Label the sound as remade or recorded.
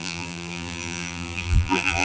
remade